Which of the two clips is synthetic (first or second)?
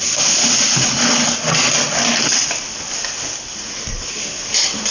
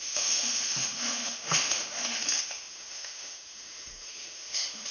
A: second